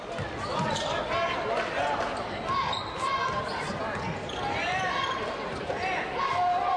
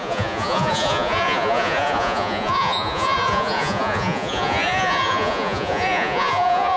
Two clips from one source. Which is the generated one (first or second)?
second